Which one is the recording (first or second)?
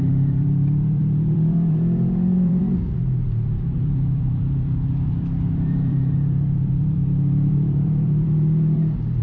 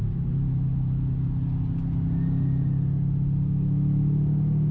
second